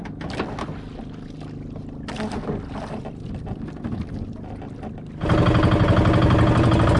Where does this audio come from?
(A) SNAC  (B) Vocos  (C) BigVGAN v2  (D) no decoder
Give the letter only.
D